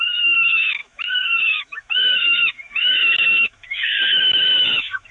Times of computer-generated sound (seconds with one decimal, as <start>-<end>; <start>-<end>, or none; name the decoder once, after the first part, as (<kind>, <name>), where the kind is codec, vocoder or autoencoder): 0.0-5.1 (autoencoder, DAC-VAE)

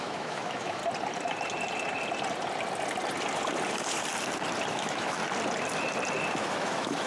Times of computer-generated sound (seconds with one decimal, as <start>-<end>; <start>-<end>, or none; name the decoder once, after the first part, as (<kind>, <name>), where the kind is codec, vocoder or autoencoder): 0.0-0.8 (autoencoder, DAC-VAE); 4.7-5.2; 6.4-7.1